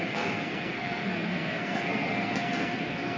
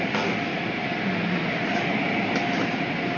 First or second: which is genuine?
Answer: second